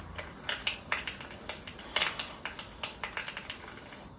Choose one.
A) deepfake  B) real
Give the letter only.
B